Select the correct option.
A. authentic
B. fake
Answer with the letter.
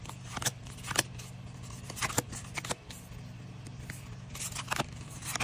A